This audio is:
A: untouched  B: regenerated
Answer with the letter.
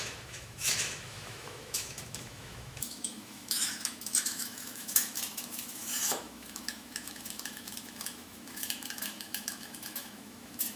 B